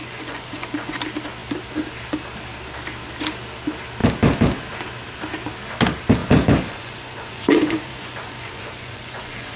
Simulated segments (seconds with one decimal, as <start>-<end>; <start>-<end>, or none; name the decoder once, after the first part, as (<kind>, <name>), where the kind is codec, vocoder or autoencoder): 0.0-1.0 (vocoder, Vocos); 6.2-9.6